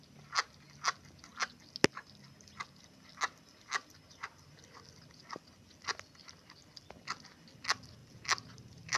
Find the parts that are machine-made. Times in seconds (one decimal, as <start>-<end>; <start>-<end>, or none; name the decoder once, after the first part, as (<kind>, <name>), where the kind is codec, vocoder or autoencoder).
8.0-9.0 (vocoder, BigVGAN v2)